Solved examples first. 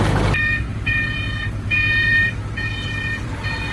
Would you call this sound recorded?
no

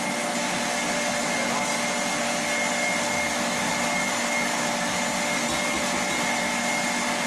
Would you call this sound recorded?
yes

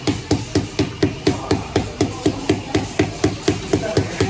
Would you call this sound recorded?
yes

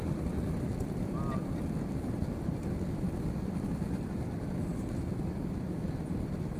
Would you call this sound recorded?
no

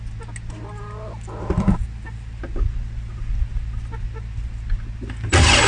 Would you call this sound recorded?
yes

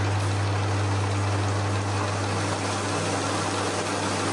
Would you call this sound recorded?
yes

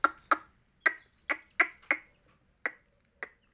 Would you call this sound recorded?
yes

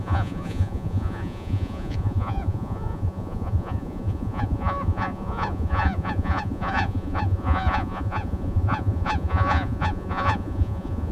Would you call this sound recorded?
no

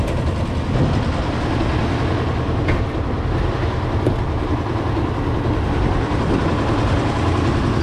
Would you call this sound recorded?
yes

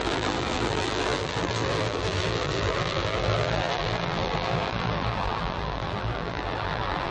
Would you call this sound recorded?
no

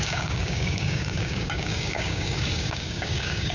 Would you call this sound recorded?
no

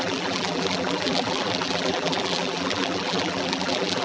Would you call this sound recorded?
no